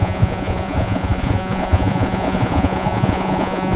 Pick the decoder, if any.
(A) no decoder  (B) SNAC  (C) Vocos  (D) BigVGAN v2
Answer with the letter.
C